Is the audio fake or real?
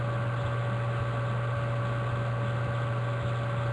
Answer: real